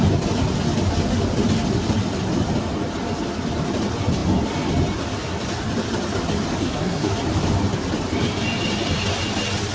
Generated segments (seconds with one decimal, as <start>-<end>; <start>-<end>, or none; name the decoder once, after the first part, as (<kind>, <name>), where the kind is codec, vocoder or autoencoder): 6.6-7.1 (codec, SNAC)